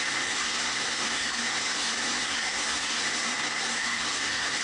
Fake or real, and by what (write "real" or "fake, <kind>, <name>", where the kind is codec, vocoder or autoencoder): fake, codec, SNAC